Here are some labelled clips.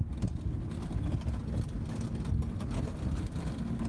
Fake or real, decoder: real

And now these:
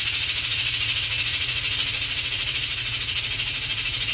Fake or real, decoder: fake, vocoder, Vocos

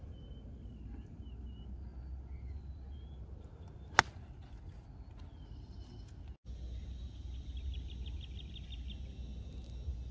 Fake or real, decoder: real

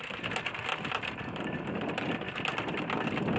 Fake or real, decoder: fake, vocoder, BigVGAN v2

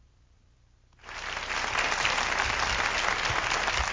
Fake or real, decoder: real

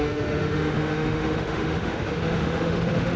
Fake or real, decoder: fake, autoencoder, DAC-VAE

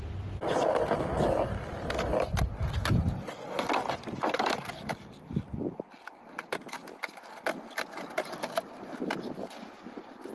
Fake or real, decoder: real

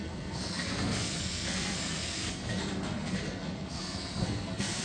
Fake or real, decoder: fake, codec, SNAC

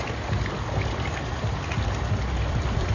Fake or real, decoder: real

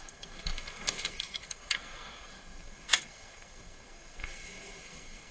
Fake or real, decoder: fake, codec, SNAC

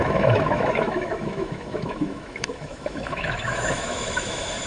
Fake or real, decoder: fake, autoencoder, DAC-VAE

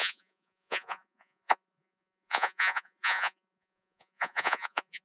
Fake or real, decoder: fake, vocoder, Vocos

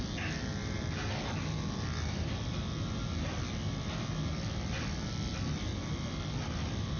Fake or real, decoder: real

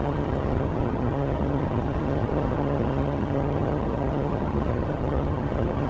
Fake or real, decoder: fake, vocoder, HiFi-GAN